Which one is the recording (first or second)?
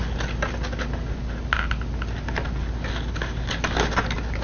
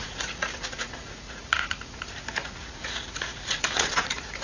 first